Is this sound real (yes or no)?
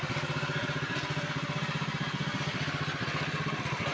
yes